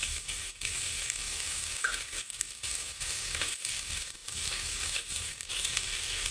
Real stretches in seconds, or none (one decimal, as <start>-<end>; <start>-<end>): none